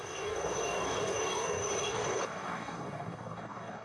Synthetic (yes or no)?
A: yes